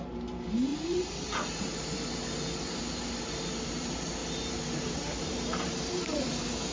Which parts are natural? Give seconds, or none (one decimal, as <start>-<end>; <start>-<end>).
4.2-4.8